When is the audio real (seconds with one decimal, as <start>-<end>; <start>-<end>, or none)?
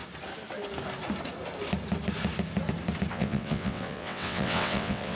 0.0-3.1